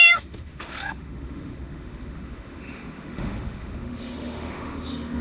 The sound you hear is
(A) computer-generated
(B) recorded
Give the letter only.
A